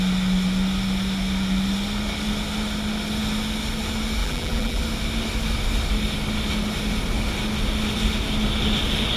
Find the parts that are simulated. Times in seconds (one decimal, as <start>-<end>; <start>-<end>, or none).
4.2-4.8